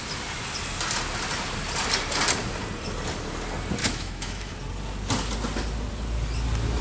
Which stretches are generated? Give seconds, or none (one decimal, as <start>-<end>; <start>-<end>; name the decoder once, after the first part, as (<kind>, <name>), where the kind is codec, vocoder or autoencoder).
3.8-4.5 (autoencoder, DAC-VAE)